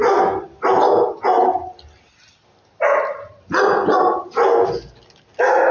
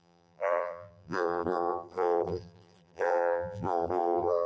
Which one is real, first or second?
first